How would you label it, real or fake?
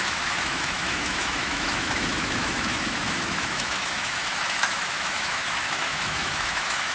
fake